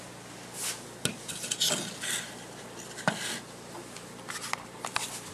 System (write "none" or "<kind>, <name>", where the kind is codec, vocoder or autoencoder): none